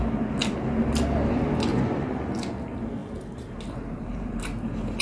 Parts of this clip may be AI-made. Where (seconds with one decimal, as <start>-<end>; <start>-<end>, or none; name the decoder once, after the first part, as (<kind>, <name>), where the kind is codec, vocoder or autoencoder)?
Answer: 1.7-2.3 (vocoder, Vocos)